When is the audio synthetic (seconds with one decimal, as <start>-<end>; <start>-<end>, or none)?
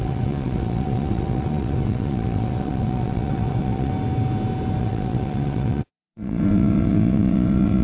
0.0-3.9; 4.8-7.8